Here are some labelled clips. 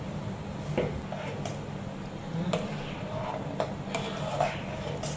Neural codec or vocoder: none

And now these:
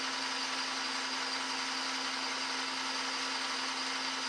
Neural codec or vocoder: none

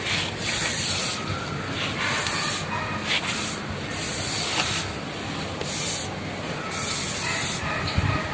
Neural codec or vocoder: none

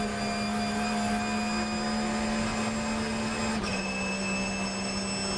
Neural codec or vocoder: none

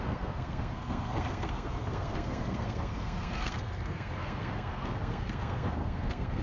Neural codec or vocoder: codec, SNAC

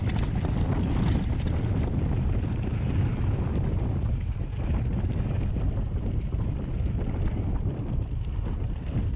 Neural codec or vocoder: none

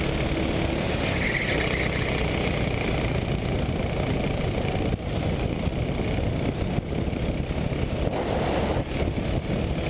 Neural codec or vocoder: none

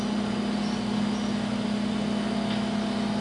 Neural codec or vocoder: none